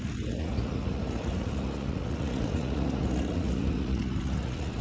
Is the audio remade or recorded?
remade